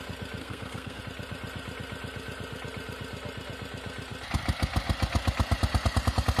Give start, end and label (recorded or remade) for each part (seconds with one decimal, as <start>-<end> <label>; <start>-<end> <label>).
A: 0.0-0.4 recorded; 0.4-1.0 remade; 1.0-6.4 recorded